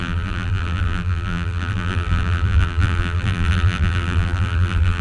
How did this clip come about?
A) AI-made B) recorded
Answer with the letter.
A